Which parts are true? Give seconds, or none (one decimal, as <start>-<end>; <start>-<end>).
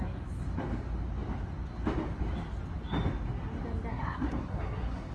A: 0.0-3.9